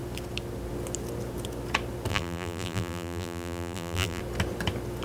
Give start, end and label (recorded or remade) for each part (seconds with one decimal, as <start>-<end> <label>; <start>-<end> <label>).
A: 0.0-2.1 recorded; 2.1-4.2 remade; 4.2-5.0 recorded